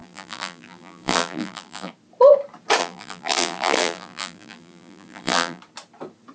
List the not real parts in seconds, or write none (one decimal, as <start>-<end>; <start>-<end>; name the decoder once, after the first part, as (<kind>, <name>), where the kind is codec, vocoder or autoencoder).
0.0-1.9 (vocoder, BigVGAN v2); 2.8-5.6